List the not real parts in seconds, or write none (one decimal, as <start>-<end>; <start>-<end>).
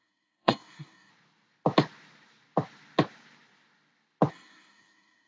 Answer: 0.0-1.1; 4.3-5.3